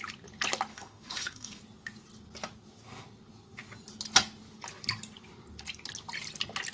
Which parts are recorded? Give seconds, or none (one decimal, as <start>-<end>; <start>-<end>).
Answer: 0.0-0.7; 1.6-6.7